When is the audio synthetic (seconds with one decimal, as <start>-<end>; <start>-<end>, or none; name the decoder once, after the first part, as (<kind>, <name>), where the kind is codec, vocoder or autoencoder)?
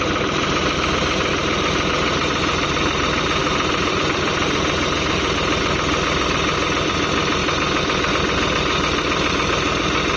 none